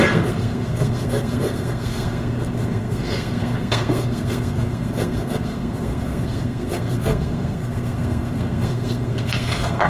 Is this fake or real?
fake